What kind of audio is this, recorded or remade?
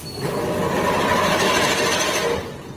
recorded